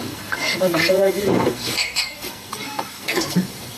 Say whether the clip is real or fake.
fake